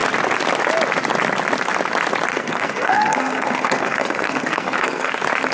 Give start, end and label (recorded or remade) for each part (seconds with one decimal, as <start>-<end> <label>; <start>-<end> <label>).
0.0-2.3 recorded; 2.3-5.1 remade; 5.1-5.5 recorded

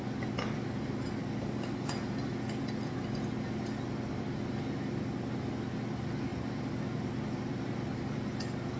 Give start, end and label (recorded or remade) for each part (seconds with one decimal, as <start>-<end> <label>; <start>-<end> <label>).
0.0-8.8 recorded